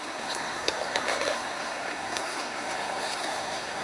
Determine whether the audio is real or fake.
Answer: fake